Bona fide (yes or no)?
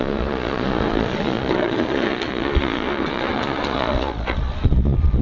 no